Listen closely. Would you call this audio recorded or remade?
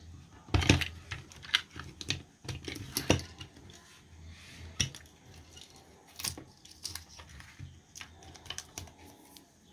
recorded